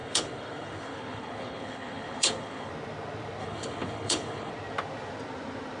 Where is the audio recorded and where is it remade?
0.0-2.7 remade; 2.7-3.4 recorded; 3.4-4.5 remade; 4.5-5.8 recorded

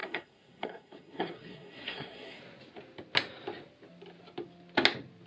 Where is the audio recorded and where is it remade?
0.0-2.4 remade; 2.4-5.3 recorded

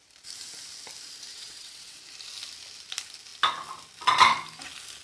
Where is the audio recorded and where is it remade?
0.0-1.3 recorded; 1.3-2.0 remade; 2.0-5.0 recorded

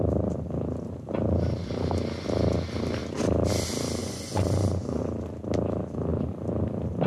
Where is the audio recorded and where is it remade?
0.0-4.0 recorded; 4.0-5.0 remade; 5.0-7.1 recorded

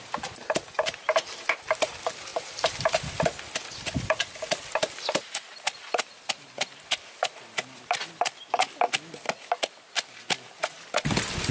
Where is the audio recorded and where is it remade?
0.0-11.5 recorded

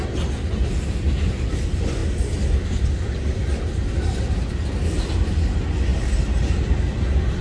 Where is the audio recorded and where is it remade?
0.0-7.4 recorded

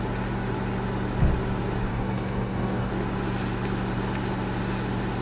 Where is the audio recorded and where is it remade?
0.0-1.9 recorded; 1.9-2.9 remade; 2.9-5.2 recorded

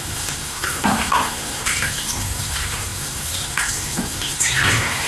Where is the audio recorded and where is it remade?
0.0-5.1 remade